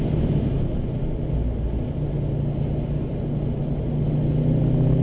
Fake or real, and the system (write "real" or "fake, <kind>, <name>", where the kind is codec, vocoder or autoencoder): real